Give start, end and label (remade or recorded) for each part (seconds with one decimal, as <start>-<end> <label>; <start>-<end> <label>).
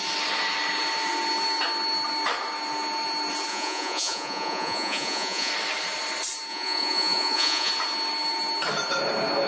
0.0-3.5 recorded; 3.5-5.5 remade; 5.5-6.5 recorded; 6.5-7.7 remade; 7.7-9.5 recorded